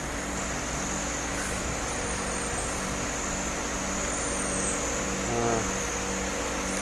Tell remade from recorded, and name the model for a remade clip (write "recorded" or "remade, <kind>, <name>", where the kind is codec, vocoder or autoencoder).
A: recorded